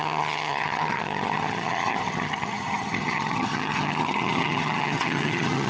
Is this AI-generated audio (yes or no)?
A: yes